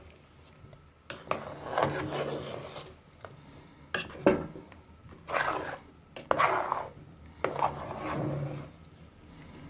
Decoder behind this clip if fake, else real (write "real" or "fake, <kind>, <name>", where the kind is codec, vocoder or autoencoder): real